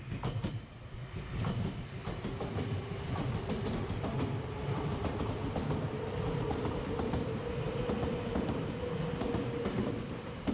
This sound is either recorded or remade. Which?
remade